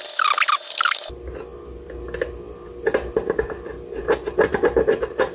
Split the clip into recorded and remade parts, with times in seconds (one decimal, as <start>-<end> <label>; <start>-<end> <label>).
0.0-5.3 recorded